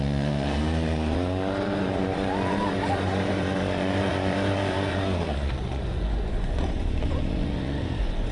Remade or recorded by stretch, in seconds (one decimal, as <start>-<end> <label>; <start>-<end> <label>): 0.0-8.3 remade